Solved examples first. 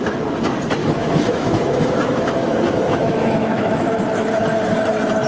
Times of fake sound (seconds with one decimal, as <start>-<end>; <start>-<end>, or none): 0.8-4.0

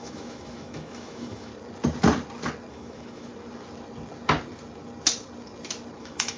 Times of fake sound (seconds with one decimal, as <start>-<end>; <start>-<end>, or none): 0.0-1.5; 2.7-3.3; 6.0-6.4

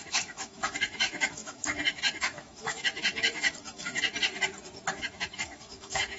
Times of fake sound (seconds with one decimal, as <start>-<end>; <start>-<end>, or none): 0.0-4.1; 4.9-6.2

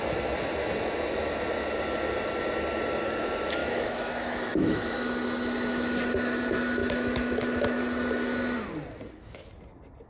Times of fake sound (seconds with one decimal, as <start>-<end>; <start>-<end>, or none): 3.6-5.1; 6.8-7.8

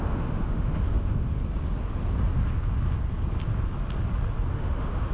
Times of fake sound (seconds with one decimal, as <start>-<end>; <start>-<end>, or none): 0.0-1.4; 4.5-5.1

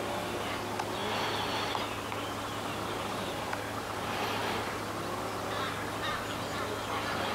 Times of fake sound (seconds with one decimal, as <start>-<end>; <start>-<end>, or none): none

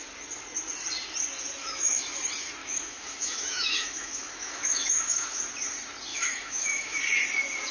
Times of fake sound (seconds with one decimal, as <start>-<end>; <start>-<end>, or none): 1.6-2.1; 2.6-5.4; 6.1-7.0